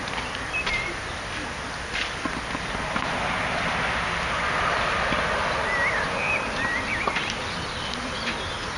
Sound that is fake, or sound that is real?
real